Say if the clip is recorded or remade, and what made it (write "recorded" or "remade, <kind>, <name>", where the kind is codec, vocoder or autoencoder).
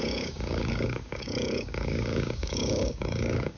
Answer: remade, codec, DAC